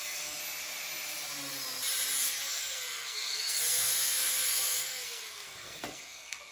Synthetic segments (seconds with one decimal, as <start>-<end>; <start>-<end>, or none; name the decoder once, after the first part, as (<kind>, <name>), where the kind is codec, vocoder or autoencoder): 0.0-0.4 (codec, SNAC); 2.2-6.5